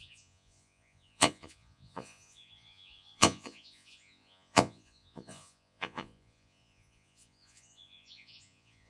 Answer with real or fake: fake